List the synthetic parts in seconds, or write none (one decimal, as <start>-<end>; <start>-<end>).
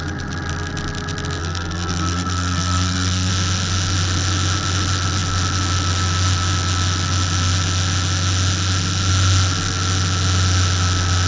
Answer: 1.4-3.3